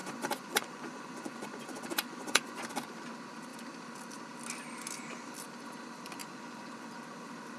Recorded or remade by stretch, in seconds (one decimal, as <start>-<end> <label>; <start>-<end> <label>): 0.0-2.6 remade; 2.6-6.2 recorded; 6.2-6.9 remade; 6.9-7.6 recorded